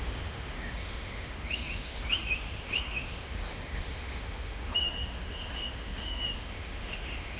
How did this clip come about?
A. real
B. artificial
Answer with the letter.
B